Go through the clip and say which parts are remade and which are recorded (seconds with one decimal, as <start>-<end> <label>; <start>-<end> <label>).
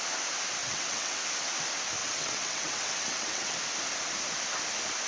0.0-0.6 recorded; 0.6-1.2 remade; 1.2-2.0 recorded; 2.0-3.6 remade; 3.6-5.1 recorded